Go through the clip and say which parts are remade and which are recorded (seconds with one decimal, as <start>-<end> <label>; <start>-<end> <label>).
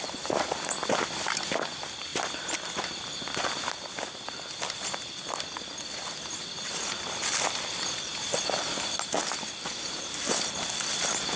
0.0-11.4 recorded